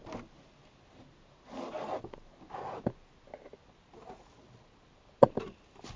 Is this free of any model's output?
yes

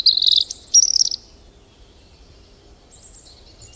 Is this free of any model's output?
yes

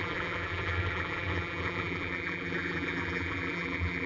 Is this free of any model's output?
no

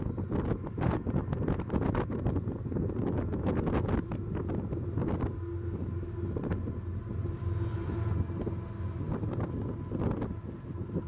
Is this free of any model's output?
yes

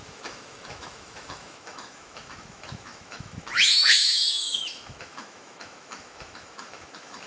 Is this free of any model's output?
no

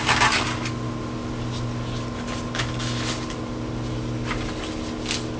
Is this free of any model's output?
yes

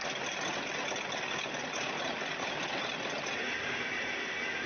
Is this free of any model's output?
yes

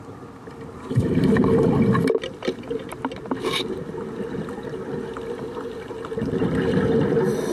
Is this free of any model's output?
yes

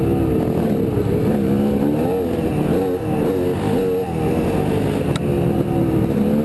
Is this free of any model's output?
yes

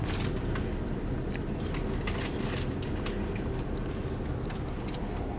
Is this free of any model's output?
yes